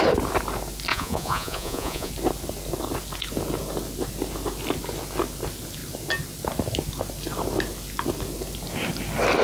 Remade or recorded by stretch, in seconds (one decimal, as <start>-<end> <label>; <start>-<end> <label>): 0.0-0.9 recorded; 0.9-2.1 remade; 2.1-9.4 recorded